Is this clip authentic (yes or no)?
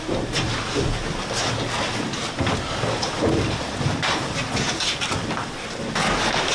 yes